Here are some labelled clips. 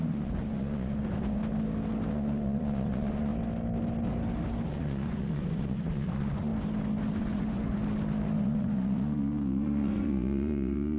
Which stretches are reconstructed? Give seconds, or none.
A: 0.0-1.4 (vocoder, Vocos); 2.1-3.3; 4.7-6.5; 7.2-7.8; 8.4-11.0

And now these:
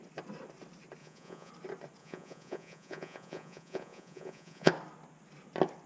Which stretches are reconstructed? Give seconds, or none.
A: 1.0-1.5 (vocoder, Vocos); 2.0-4.7

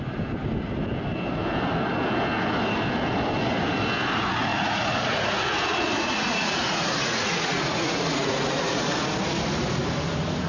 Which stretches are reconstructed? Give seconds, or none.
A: 4.5-8.9 (vocoder, Vocos)

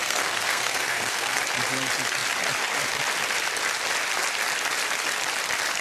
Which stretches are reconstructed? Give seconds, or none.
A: 0.0-1.4 (codec, SNAC)